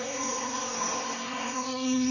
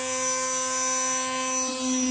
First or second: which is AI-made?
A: first